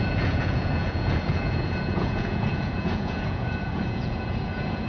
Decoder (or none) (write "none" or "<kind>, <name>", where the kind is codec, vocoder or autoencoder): vocoder, Vocos